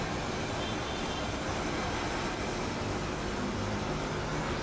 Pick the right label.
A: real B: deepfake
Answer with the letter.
A